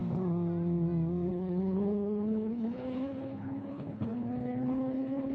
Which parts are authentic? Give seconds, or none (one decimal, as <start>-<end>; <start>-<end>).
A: 0.0-1.3